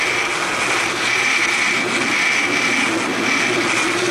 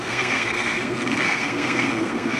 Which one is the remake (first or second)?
second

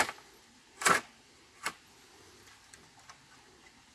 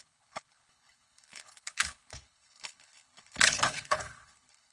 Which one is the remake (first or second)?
second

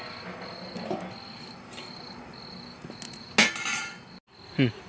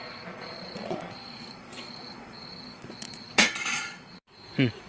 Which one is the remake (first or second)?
second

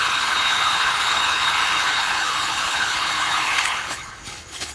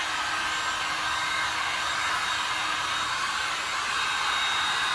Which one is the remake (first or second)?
first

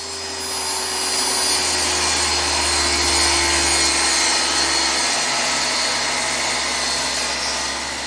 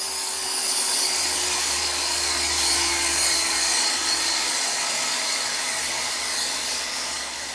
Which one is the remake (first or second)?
second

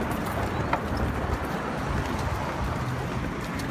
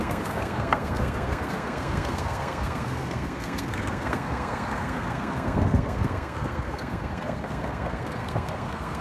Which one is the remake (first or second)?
second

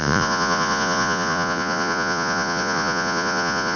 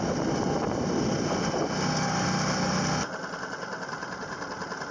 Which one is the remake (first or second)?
first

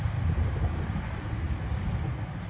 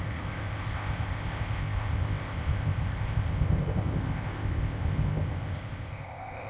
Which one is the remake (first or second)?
second